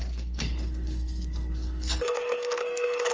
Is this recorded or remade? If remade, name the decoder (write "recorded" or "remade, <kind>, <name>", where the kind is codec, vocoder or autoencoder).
remade, codec, SNAC